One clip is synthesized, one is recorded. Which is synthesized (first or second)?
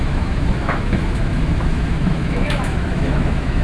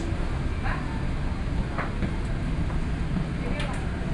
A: first